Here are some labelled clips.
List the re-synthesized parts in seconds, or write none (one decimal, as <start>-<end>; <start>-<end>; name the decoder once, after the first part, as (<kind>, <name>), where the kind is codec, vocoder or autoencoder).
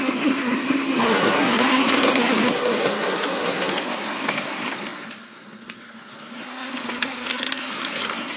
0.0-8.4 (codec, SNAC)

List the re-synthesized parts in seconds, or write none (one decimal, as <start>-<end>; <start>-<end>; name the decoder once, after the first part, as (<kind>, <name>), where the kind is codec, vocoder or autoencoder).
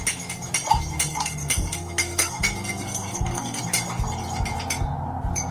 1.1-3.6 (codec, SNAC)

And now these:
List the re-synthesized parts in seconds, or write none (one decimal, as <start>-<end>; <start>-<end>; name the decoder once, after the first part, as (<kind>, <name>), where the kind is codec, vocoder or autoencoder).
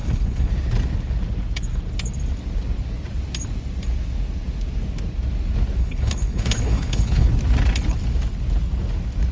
0.0-0.5 (codec, HILCodec); 5.8-7.3